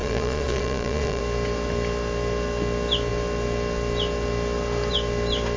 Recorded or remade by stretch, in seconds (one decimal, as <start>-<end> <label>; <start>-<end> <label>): 0.0-1.2 remade; 1.2-5.6 recorded